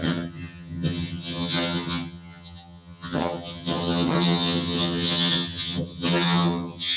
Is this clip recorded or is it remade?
remade